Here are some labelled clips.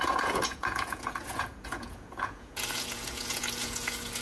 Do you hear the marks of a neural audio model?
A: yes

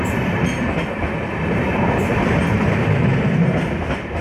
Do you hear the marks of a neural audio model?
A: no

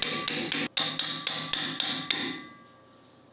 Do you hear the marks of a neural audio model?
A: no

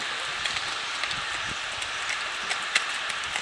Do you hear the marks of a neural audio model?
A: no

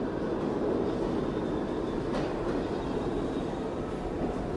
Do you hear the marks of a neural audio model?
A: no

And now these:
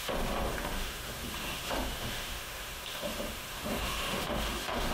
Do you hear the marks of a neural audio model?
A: yes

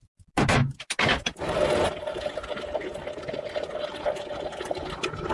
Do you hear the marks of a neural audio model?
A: no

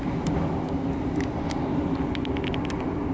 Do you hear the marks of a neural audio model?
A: no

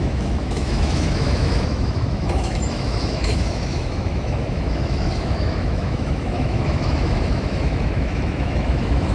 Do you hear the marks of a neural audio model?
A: yes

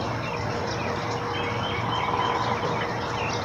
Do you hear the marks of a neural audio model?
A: no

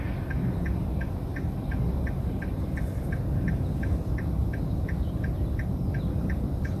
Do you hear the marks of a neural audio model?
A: no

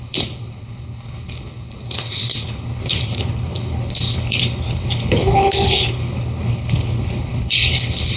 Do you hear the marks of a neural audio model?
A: yes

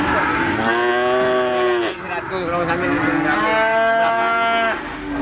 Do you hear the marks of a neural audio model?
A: no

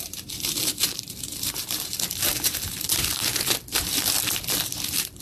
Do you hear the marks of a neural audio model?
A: yes